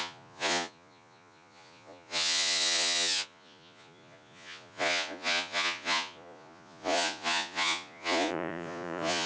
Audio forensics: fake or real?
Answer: fake